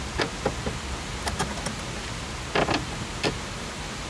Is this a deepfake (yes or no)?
no